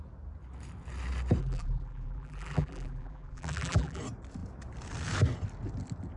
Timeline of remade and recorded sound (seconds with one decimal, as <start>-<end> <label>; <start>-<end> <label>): 0.0-1.4 recorded; 1.4-4.0 remade; 4.0-6.2 recorded